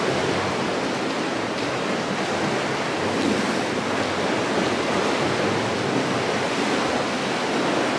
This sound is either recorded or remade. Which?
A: recorded